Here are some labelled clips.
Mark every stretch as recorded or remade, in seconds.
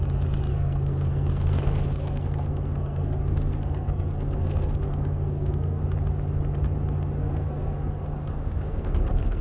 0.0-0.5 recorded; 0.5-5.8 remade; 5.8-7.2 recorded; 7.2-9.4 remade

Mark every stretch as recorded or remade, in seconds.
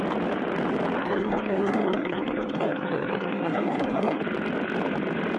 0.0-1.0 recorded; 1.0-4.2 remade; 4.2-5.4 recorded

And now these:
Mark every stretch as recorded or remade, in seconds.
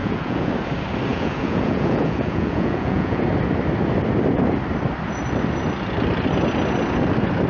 0.0-0.5 remade; 0.5-1.1 recorded; 1.1-3.2 remade; 3.2-7.5 recorded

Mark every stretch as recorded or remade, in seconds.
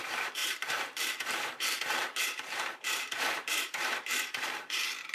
0.0-5.1 remade